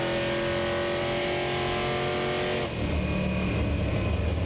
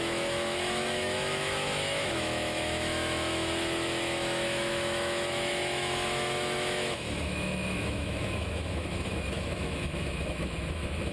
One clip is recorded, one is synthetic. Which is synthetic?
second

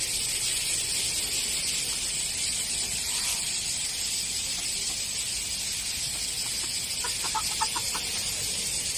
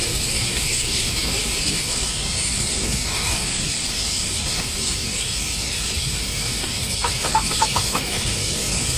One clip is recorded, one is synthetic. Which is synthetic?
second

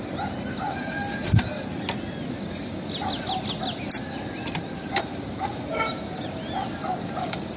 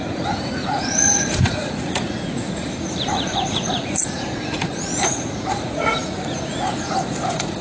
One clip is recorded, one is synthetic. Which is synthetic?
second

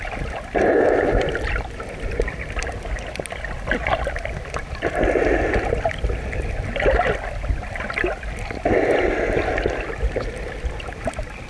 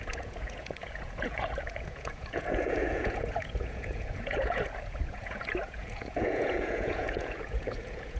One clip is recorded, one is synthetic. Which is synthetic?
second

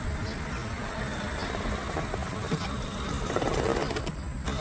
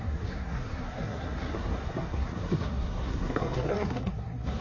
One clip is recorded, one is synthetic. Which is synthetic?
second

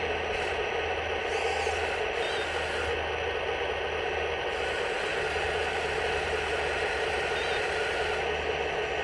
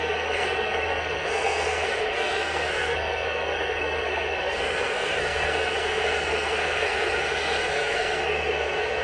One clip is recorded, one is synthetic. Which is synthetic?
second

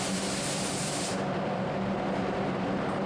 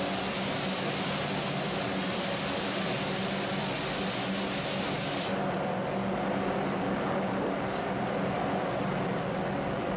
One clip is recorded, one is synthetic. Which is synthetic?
first